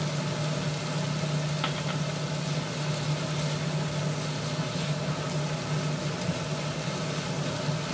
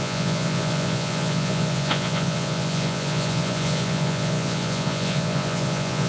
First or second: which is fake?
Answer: second